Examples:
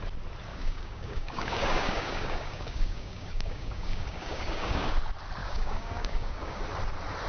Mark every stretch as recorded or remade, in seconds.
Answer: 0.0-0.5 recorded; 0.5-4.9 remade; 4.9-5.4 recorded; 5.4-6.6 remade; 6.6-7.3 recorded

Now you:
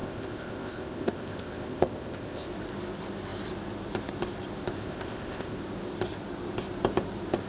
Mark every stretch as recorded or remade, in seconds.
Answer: 0.0-2.5 remade; 2.5-4.8 recorded; 4.8-5.6 remade; 5.6-7.5 recorded

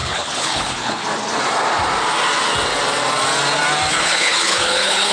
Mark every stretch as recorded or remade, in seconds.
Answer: 0.0-1.0 remade; 1.0-3.9 recorded; 3.9-5.1 remade